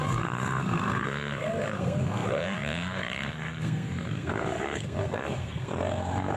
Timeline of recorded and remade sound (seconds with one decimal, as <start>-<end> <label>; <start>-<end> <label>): 0.0-6.4 remade